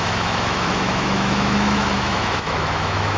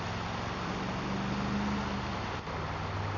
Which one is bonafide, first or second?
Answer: second